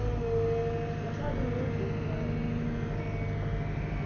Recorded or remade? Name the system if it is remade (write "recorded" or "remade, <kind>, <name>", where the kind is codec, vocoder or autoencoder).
recorded